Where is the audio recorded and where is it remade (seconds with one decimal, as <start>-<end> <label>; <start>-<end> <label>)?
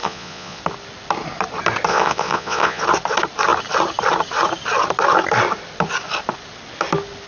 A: 0.0-0.6 remade; 0.6-1.9 recorded; 1.9-2.8 remade; 2.8-7.3 recorded